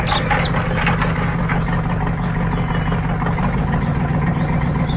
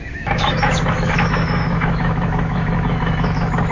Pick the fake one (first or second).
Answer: second